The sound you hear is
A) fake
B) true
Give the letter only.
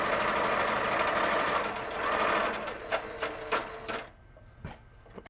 B